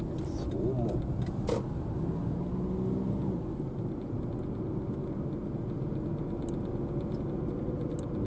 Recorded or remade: recorded